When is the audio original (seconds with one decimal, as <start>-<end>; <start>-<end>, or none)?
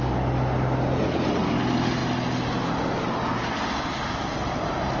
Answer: 0.0-5.0